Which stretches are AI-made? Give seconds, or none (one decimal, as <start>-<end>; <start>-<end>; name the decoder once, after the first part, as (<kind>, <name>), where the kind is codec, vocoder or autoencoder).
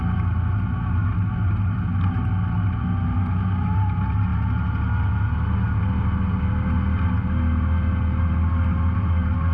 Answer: none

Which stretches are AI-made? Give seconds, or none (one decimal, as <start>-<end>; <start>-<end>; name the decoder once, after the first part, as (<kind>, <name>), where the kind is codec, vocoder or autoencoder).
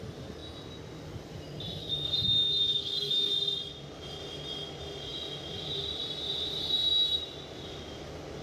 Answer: 1.8-3.3 (codec, DAC)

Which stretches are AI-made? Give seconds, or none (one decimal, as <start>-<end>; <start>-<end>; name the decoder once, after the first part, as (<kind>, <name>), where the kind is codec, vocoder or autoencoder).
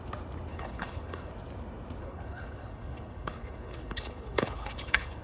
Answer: 0.5-1.3 (codec, HILCodec); 2.0-5.2